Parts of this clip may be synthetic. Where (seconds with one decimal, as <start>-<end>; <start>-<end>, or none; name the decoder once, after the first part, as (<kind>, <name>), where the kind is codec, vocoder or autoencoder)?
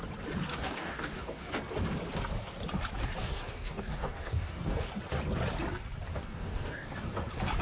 0.5-1.5 (codec, DAC); 3.2-4.9; 6.1-6.9